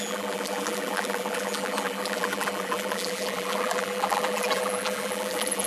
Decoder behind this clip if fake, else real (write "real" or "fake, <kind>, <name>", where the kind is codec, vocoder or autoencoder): fake, vocoder, BigVGAN v2